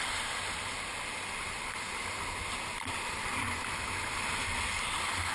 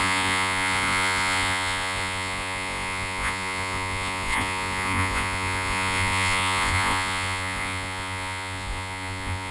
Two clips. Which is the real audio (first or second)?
first